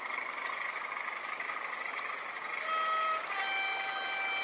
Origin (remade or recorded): recorded